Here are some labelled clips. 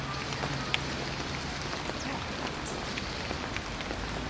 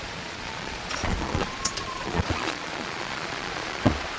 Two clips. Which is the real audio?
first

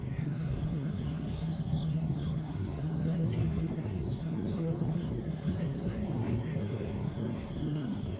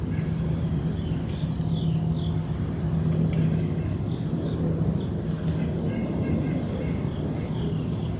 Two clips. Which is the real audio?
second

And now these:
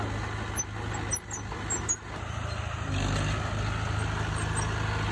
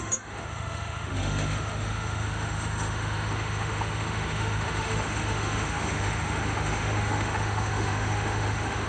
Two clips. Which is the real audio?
first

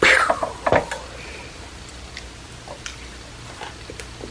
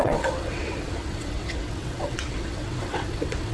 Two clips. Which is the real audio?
first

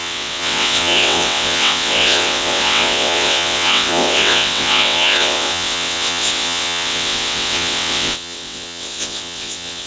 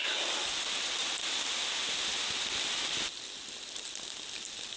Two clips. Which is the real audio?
second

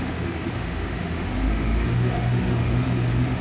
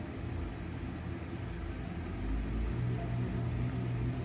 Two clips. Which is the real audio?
second